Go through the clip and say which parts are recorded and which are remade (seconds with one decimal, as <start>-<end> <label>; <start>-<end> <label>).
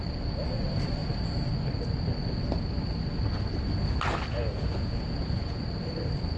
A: 0.0-4.3 recorded; 4.3-5.6 remade; 5.6-6.4 recorded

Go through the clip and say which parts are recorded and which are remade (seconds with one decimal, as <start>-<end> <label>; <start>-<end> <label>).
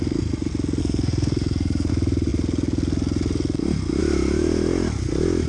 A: 0.0-0.8 recorded; 0.8-1.9 remade; 1.9-5.5 recorded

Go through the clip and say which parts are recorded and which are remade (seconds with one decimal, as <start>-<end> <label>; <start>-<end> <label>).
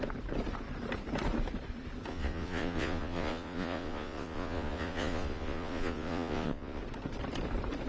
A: 0.0-2.1 recorded; 2.1-6.8 remade; 6.8-7.9 recorded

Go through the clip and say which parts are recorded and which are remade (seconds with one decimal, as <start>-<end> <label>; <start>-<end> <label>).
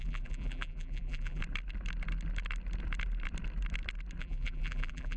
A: 0.0-1.4 remade; 1.4-4.2 recorded; 4.2-5.2 remade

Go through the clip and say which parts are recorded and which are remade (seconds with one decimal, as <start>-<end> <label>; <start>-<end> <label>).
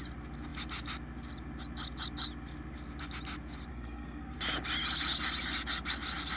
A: 0.0-3.7 recorded; 3.7-4.4 remade; 4.4-6.4 recorded